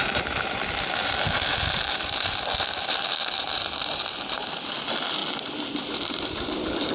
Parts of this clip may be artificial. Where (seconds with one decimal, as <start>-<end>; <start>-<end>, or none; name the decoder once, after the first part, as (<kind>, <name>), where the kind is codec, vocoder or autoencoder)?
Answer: 0.0-5.2 (vocoder, BigVGAN v2); 5.8-6.9